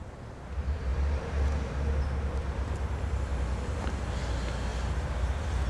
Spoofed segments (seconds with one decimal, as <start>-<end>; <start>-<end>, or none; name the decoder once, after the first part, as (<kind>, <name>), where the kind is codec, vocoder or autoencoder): none